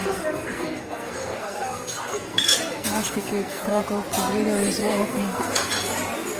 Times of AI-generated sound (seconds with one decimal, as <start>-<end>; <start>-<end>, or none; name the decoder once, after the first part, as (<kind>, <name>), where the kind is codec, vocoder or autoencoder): 0.0-3.8 (codec, SNAC); 4.8-5.7